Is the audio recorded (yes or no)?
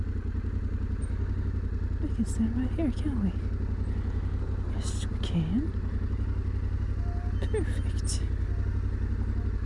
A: yes